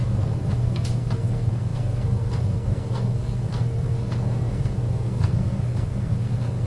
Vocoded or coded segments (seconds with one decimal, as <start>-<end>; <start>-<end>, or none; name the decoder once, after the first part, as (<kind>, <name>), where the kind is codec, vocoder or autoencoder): 0.0-6.7 (codec, SNAC)

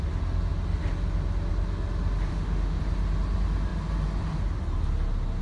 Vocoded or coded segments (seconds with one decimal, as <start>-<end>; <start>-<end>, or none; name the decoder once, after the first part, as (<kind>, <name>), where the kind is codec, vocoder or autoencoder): 2.3-2.8 (autoencoder, DAC-VAE)

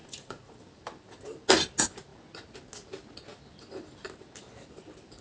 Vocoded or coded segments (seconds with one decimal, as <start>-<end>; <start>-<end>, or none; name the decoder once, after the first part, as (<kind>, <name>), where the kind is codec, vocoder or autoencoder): 0.0-0.5 (vocoder, Vocos)

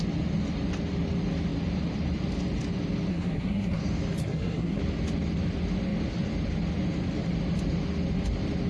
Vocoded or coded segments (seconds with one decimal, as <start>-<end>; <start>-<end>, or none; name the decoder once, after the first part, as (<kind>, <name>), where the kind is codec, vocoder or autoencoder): 3.1-3.8 (codec, SNAC); 4.2-4.8